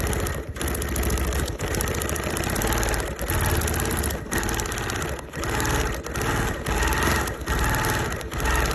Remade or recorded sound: recorded